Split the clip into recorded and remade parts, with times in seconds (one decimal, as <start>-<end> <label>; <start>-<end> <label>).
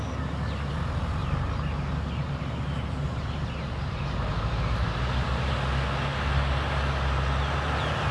0.0-1.2 recorded; 1.2-5.5 remade; 5.5-8.1 recorded